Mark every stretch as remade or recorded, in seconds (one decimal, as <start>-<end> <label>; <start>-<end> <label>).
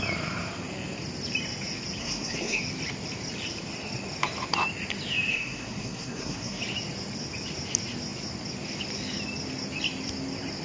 0.0-2.0 recorded; 2.0-2.6 remade; 2.6-5.3 recorded; 5.3-6.6 remade; 6.6-10.6 recorded